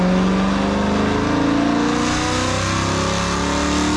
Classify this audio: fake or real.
real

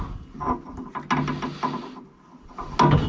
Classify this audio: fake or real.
real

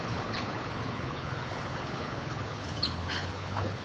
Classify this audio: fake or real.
fake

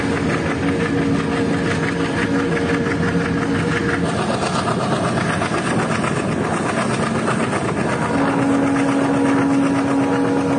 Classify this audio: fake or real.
real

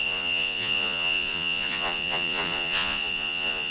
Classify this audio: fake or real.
fake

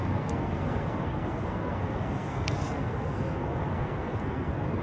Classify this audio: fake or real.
fake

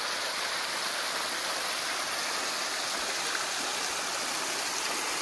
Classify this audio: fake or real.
real